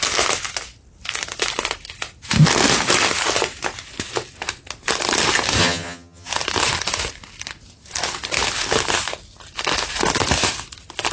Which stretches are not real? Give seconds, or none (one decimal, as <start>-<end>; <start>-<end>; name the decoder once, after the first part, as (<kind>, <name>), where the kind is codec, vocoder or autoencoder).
5.6-6.3 (vocoder, HiFi-GAN)